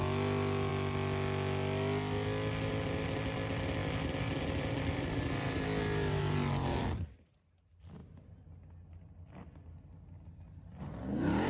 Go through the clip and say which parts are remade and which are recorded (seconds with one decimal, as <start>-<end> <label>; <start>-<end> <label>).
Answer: 0.0-11.5 recorded